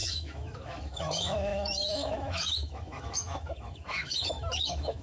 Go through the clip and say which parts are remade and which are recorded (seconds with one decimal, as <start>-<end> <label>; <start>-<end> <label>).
0.0-5.0 remade